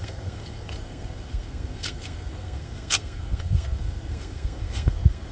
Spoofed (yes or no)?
yes